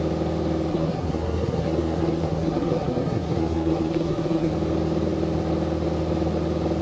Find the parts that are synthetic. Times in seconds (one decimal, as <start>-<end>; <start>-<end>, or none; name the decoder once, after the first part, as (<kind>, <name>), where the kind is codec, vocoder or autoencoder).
0.7-4.5 (codec, SNAC)